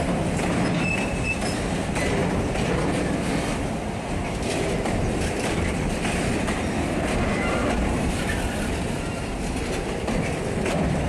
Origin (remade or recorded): remade